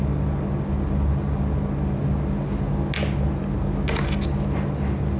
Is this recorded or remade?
recorded